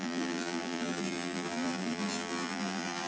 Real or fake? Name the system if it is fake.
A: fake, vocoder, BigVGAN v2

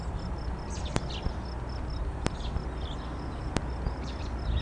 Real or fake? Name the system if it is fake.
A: real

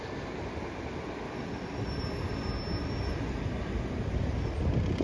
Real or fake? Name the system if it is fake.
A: real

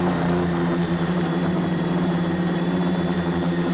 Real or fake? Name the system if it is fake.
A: fake, vocoder, BigVGAN v2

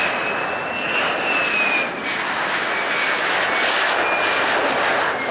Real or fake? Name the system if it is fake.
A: real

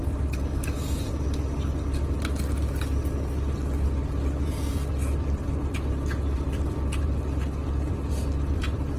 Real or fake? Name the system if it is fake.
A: real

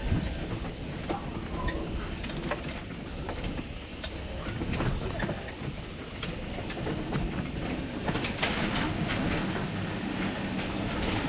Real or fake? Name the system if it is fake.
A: real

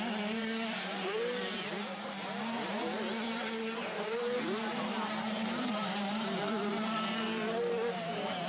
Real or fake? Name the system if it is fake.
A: fake, vocoder, BigVGAN v2